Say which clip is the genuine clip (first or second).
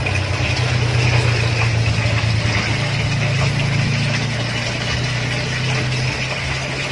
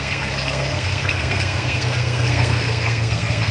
first